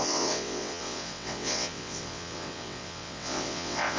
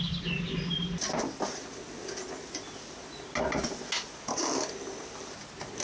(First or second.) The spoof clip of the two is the first